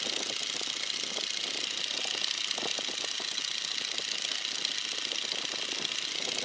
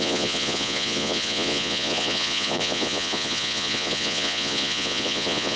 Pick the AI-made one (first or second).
second